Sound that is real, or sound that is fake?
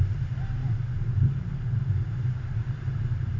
real